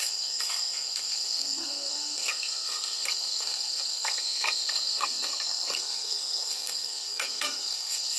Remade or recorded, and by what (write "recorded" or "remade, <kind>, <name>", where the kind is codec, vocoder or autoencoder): remade, codec, SNAC